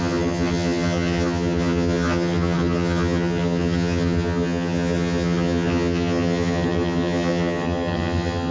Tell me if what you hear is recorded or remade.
remade